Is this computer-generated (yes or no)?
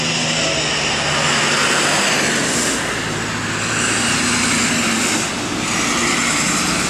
no